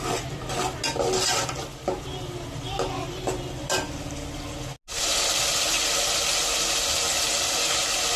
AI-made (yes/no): no